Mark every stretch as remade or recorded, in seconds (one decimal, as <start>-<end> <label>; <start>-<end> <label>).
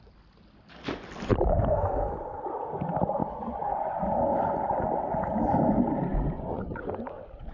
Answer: 0.0-3.2 recorded; 3.2-3.8 remade; 3.8-6.1 recorded; 6.1-6.8 remade; 6.8-7.5 recorded